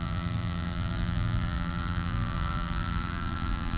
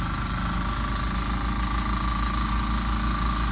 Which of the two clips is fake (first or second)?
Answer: first